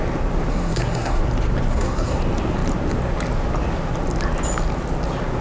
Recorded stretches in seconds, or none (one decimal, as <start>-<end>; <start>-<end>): 0.0-0.5; 1.2-1.7; 2.2-5.4